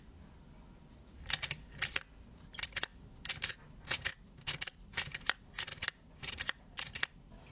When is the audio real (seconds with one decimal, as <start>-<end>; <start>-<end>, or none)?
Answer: 0.0-7.5